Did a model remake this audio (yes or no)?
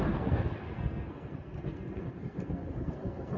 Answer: yes